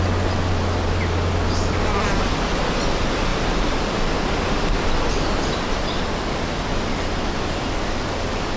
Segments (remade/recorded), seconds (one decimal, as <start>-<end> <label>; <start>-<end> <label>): 0.0-8.6 recorded

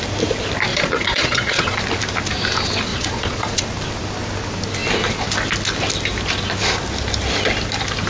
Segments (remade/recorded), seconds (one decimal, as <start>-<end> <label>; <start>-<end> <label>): 0.0-0.7 recorded; 0.7-1.8 remade; 1.8-2.9 recorded; 2.9-3.6 remade; 3.6-8.1 recorded

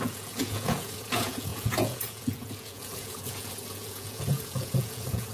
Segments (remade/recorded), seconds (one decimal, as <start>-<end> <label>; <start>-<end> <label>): 0.0-5.3 remade

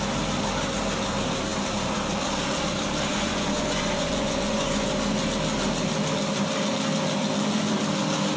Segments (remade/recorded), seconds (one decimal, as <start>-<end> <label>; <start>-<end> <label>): 0.0-3.1 recorded; 3.1-4.9 remade; 4.9-8.4 recorded